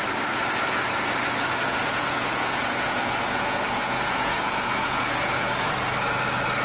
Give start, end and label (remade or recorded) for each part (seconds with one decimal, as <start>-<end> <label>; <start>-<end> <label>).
0.0-1.7 recorded; 1.7-5.7 remade; 5.7-6.6 recorded